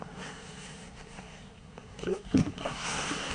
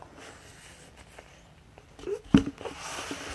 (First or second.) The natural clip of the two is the second